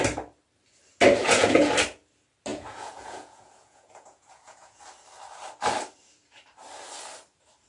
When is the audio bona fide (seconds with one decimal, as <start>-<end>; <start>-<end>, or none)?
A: 0.0-1.2; 1.7-2.5; 4.8-7.7